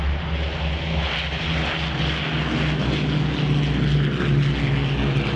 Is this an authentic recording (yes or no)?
yes